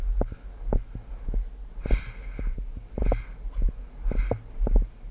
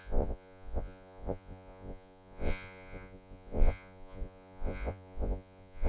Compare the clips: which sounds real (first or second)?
first